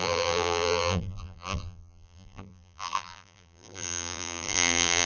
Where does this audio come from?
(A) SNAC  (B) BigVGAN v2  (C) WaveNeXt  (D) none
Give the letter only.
B